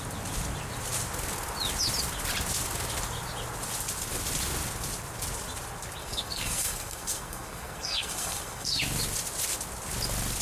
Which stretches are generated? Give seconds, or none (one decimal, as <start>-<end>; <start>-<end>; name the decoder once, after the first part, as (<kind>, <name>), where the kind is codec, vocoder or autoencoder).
6.0-8.8 (codec, SNAC)